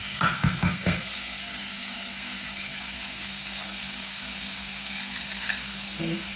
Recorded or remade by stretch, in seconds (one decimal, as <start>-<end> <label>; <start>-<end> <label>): 0.0-6.4 remade